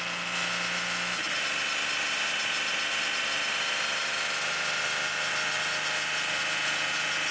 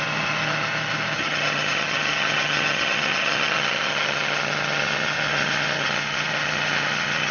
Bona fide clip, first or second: first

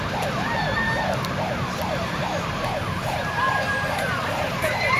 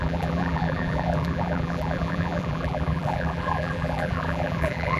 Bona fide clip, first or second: first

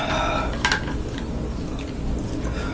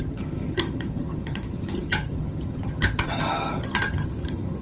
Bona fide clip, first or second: first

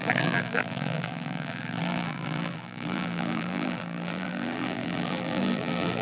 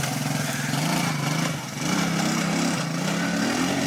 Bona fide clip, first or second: second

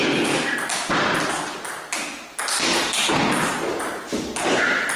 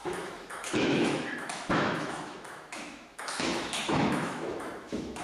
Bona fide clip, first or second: first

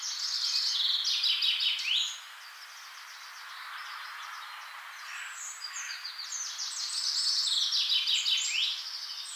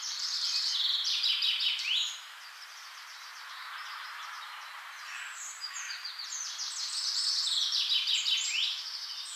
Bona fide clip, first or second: first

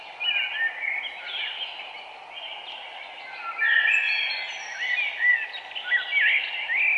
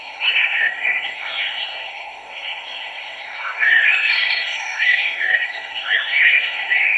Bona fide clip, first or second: first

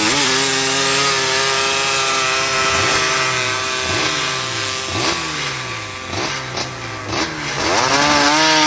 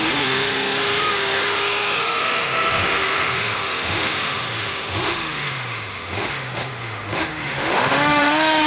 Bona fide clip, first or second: first